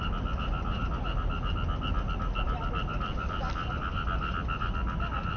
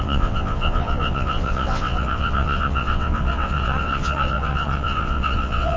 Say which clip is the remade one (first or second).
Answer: second